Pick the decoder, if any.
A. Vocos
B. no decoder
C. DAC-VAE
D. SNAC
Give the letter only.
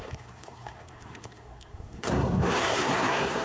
D